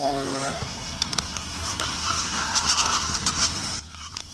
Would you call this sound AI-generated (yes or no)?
yes